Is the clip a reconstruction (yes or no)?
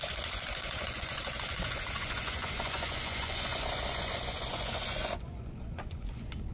yes